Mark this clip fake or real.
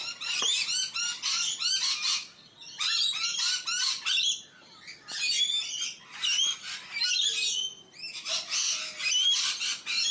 real